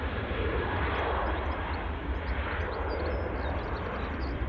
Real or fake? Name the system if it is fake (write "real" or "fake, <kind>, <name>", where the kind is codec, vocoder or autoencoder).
real